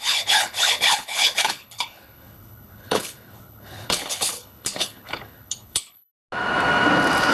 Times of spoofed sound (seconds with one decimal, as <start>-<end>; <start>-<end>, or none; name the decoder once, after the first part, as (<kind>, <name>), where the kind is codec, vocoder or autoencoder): 0.0-6.1 (codec, HILCodec)